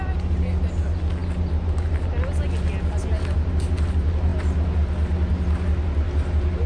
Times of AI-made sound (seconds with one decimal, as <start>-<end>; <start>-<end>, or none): none